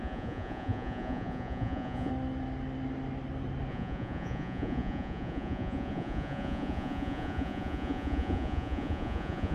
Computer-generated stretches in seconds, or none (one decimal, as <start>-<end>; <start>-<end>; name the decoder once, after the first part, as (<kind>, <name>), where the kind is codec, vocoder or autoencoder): 0.0-2.1 (vocoder, Vocos); 3.7-9.5